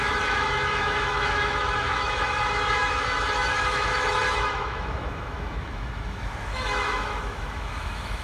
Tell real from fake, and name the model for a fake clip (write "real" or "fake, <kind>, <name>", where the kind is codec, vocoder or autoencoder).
fake, autoencoder, DAC-VAE